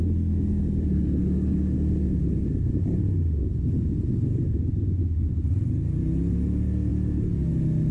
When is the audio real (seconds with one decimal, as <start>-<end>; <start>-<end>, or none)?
0.0-7.9